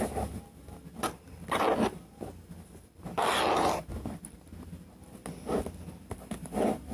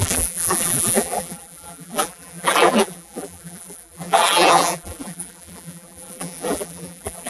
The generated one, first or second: second